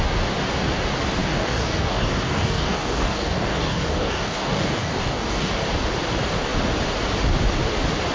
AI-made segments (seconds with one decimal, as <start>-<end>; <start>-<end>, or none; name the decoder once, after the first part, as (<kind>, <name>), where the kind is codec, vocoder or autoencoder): 1.2-5.6 (codec, DAC)

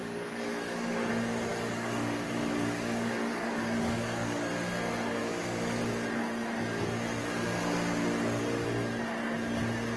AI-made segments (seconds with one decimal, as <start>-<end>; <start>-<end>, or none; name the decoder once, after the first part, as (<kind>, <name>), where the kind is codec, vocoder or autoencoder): 0.0-1.1 (codec, DAC); 1.5-4.5; 5.2-5.8

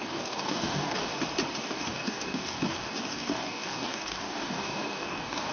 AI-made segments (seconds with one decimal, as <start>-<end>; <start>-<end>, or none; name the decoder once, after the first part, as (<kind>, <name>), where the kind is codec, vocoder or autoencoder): 0.0-1.1 (codec, DAC); 1.6-5.5

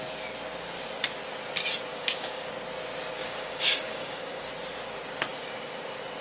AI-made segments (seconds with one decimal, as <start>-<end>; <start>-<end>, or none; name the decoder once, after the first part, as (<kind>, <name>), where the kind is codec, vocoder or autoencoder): 1.9-2.5 (codec, DAC); 3.2-4.5